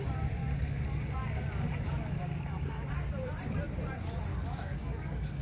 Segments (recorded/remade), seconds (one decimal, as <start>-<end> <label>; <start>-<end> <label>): 0.0-0.4 recorded; 0.4-2.9 remade; 2.9-4.3 recorded; 4.3-5.4 remade